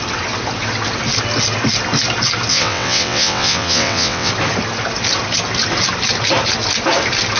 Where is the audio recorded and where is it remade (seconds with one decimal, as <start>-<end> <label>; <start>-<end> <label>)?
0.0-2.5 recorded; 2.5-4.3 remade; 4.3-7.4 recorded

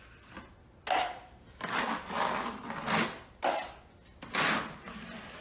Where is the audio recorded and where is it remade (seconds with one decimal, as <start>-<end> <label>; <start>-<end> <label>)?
0.0-5.4 recorded

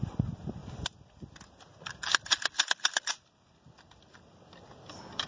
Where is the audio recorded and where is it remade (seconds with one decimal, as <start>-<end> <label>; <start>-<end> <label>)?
0.0-5.3 recorded